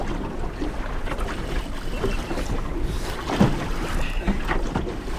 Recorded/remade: recorded